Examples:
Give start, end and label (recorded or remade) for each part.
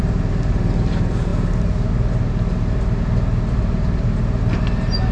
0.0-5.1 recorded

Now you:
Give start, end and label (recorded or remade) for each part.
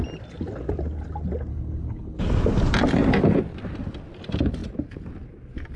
0.0-1.5 recorded; 1.5-2.2 remade; 2.2-5.8 recorded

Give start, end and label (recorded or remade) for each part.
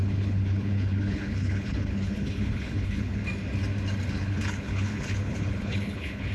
0.0-3.2 remade; 3.2-4.1 recorded; 4.1-6.3 remade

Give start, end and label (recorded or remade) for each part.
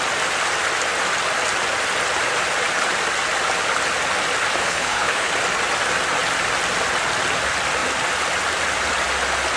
0.0-4.6 recorded; 4.6-5.3 remade; 5.3-9.6 recorded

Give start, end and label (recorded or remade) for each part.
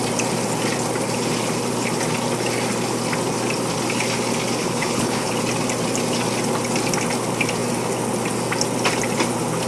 0.0-4.6 recorded; 4.6-5.3 remade; 5.3-9.7 recorded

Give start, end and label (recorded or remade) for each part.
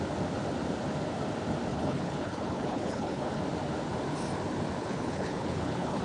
0.0-1.7 recorded; 1.7-3.4 remade; 3.4-4.8 recorded; 4.8-6.0 remade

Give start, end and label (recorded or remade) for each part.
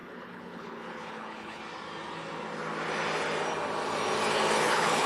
0.0-1.6 remade; 1.6-4.6 recorded; 4.6-5.1 remade